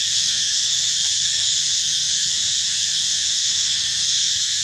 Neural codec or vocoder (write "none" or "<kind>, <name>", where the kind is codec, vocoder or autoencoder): codec, SNAC